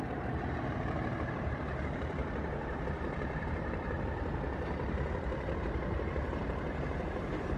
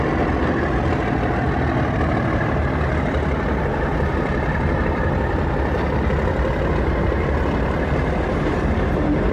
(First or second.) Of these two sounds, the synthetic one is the first